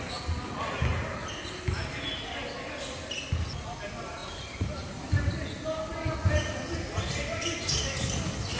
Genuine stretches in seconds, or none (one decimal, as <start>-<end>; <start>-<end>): 0.0-4.2; 5.2-8.6